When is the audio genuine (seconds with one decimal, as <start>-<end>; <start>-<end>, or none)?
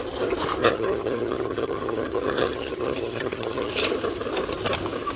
0.0-0.6; 3.7-5.2